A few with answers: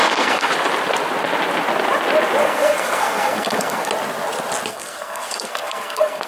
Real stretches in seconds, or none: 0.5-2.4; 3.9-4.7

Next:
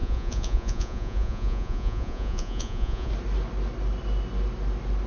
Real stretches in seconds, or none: 3.1-5.1

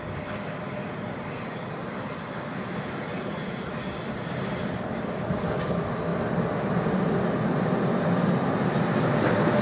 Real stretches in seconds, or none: 0.0-3.1; 3.7-9.6

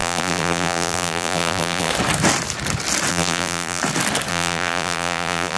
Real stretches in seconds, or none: 1.9-3.1; 3.8-4.3

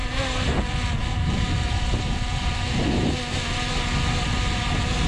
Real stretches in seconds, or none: 0.0-5.1

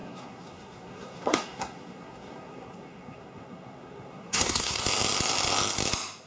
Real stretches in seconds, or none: 4.8-6.3